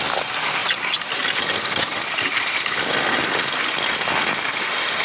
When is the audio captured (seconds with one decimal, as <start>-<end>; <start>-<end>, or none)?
0.0-5.0